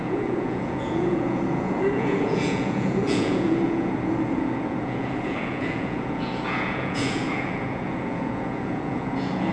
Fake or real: fake